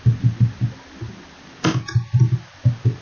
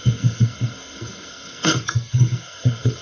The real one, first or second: first